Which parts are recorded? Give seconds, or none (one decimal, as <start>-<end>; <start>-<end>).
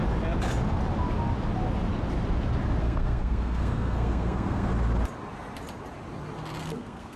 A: 0.0-2.8; 4.7-6.6